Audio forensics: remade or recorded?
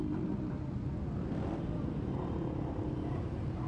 recorded